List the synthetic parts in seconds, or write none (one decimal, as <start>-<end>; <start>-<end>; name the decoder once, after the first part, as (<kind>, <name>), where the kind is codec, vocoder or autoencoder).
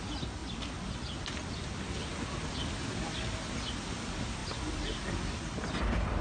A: none